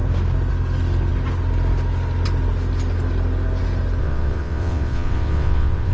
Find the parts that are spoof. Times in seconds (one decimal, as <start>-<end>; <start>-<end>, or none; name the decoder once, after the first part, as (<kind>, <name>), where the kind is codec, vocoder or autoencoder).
4.0-5.9 (vocoder, WaveNeXt)